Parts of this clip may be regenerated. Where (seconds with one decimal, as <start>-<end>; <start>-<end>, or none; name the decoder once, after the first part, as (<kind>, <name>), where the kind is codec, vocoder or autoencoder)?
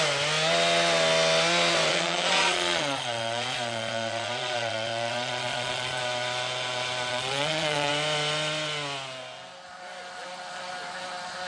1.9-6.0 (vocoder, Vocos); 7.1-7.9